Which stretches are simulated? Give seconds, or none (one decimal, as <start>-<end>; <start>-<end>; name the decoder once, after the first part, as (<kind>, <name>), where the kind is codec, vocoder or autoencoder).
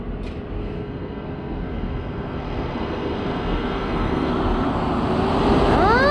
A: 0.6-4.3 (codec, SNAC)